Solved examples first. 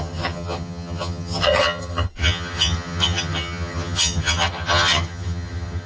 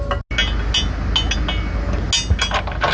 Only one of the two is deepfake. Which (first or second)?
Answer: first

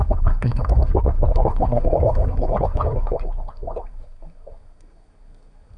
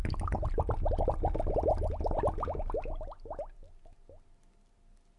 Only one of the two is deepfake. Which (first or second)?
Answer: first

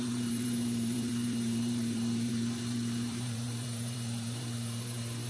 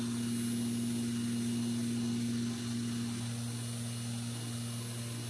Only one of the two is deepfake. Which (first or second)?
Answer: first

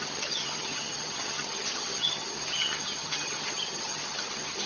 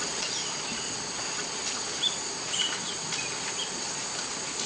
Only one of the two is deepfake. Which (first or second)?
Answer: first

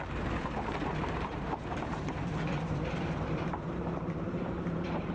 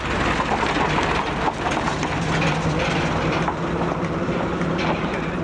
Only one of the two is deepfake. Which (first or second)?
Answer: first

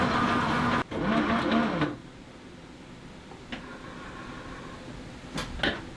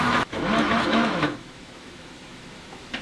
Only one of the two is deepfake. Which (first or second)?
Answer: second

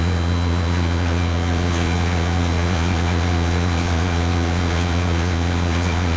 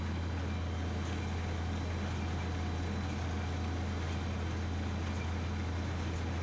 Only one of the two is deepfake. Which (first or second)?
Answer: first